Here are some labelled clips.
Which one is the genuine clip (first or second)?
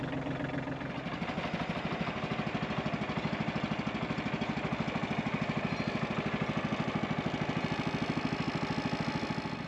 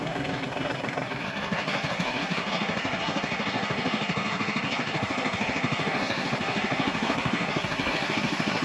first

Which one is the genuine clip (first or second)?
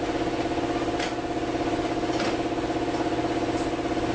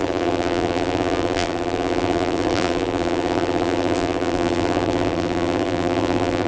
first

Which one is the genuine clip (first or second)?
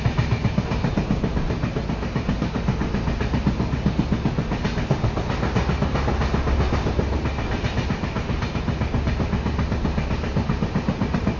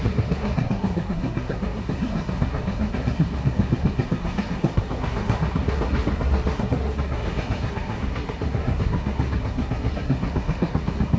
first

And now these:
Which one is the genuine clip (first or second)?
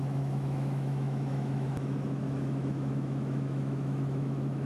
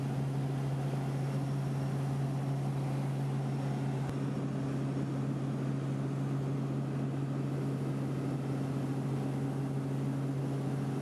second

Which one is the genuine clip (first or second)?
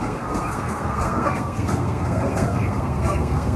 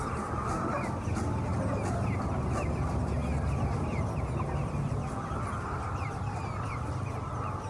second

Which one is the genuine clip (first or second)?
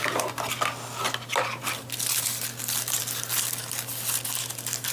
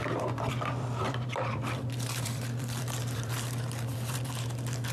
first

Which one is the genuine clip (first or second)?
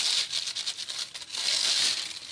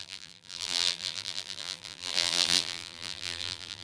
first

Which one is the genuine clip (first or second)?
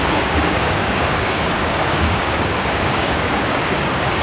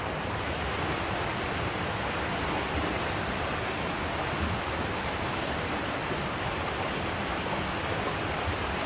second